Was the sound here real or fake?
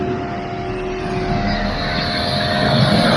real